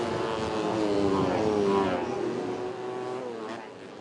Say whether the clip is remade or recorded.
recorded